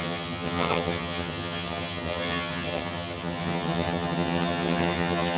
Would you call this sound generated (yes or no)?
yes